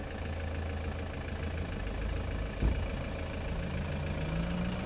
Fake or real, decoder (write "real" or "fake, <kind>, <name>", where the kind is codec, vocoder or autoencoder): real